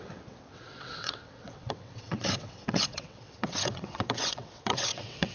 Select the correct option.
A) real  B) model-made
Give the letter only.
B